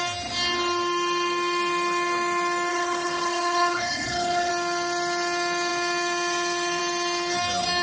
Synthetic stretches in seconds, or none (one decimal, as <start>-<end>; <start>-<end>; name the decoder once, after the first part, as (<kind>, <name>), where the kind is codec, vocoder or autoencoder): 2.7-4.5 (codec, HILCodec)